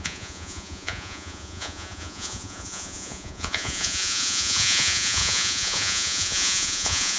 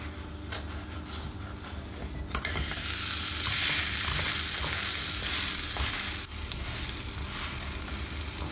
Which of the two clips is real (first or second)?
second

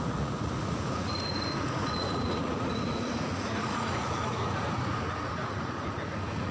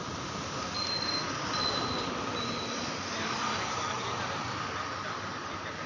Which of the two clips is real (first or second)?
second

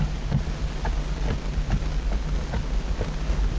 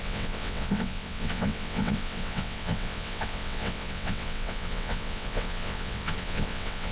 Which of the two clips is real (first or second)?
first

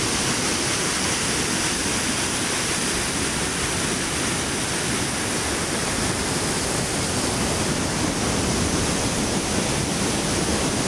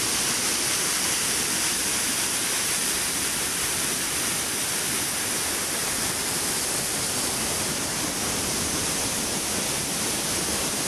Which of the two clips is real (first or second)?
first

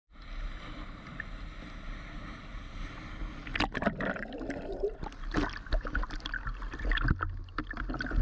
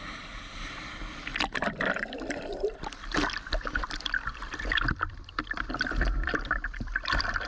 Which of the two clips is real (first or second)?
first